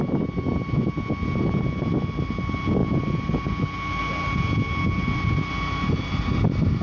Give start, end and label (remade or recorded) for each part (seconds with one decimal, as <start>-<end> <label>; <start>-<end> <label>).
0.0-6.8 recorded